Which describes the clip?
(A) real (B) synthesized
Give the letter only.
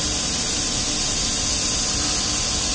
A